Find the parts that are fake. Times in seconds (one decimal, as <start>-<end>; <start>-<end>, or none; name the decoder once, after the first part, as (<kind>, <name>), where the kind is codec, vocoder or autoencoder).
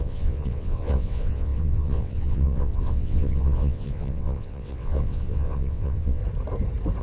0.0-6.2 (vocoder, WaveNeXt)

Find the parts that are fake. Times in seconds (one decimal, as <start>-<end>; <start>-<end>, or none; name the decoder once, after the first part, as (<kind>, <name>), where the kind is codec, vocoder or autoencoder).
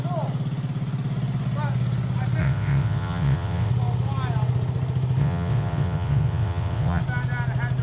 2.4-3.7 (vocoder, WaveNeXt); 5.2-7.0